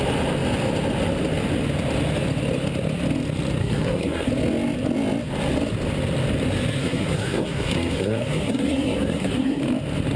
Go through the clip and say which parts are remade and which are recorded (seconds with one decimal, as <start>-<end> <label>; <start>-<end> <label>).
0.0-3.6 recorded; 3.6-4.3 remade; 4.3-6.8 recorded; 6.8-9.6 remade; 9.6-10.2 recorded